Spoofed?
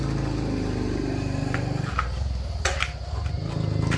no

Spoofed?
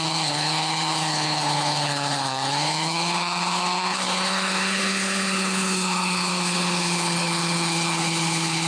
yes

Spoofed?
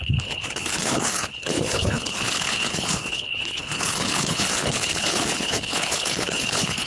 yes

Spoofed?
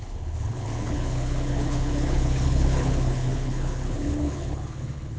yes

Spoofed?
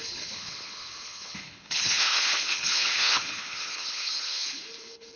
yes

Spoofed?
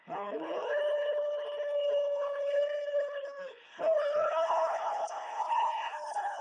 yes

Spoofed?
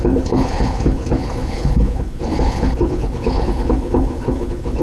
yes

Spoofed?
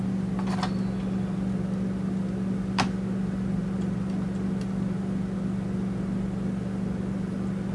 no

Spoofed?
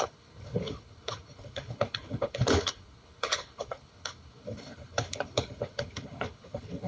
yes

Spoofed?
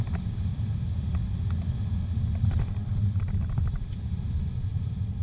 no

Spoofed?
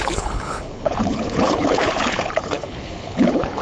yes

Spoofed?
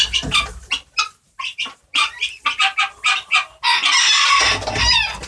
no